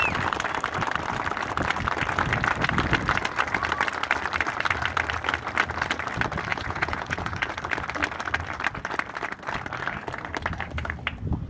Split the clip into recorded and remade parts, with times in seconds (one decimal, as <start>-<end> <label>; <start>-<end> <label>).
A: 0.0-6.5 recorded; 6.5-7.5 remade; 7.5-11.5 recorded